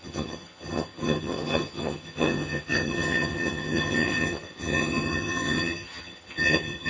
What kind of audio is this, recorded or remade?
remade